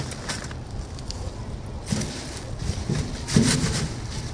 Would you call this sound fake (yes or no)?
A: no